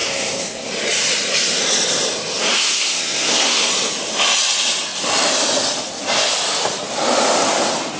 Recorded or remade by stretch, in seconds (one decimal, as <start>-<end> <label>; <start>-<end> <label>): 0.0-0.7 remade; 0.7-2.4 recorded; 2.4-3.7 remade; 3.7-8.0 recorded